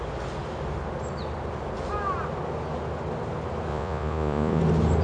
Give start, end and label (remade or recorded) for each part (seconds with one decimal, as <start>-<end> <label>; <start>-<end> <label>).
0.0-3.7 recorded; 3.7-4.6 remade; 4.6-5.0 recorded